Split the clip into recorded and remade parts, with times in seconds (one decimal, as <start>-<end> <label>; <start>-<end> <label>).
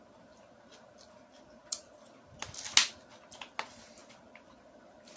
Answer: 0.0-5.2 recorded